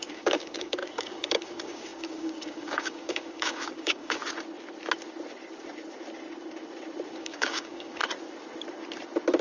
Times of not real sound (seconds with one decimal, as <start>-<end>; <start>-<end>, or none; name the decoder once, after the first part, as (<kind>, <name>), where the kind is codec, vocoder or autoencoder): 0.0-4.2 (codec, DAC); 7.2-8.0